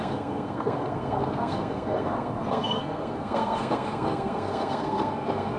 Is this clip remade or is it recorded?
remade